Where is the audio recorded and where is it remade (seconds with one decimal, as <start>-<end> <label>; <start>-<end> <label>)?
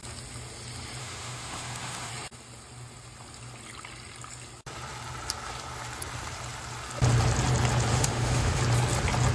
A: 0.0-1.0 recorded; 1.0-2.1 remade; 2.1-7.9 recorded; 7.9-8.6 remade; 8.6-9.3 recorded